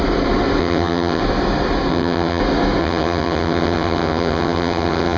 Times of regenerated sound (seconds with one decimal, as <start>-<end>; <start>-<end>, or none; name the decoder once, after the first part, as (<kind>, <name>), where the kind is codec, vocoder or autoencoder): 0.6-1.2 (vocoder, HiFi-GAN); 1.9-2.4; 2.8-5.2